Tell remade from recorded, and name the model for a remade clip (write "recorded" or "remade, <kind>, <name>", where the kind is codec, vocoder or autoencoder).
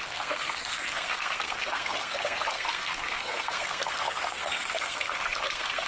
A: remade, codec, SNAC